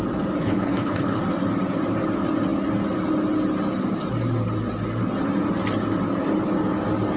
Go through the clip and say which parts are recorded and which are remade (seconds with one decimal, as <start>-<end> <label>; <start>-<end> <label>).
0.0-0.4 recorded; 0.4-1.2 remade; 1.2-7.2 recorded